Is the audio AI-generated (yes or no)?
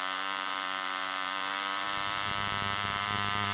yes